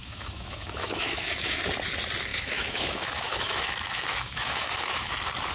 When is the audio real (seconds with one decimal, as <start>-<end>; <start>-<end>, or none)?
1.6-2.3; 5.1-5.5